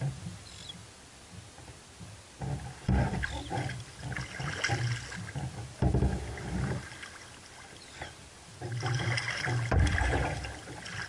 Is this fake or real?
real